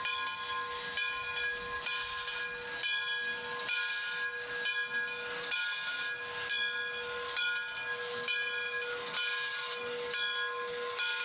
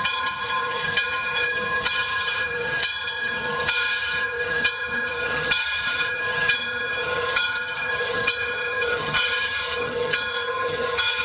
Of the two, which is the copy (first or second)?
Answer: second